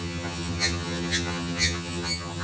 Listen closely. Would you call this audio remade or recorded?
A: remade